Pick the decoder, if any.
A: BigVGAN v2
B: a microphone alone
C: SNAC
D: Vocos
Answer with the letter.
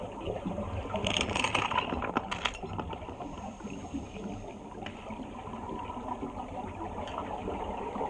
B